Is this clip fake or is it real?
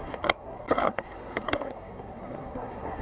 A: fake